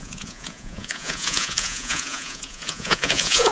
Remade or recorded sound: remade